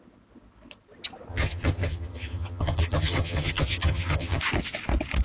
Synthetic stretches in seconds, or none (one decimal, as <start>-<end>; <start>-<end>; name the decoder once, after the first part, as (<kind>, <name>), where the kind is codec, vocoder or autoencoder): 1.3-4.4 (vocoder, HiFi-GAN)